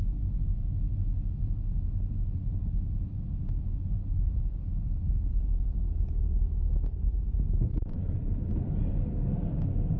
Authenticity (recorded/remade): recorded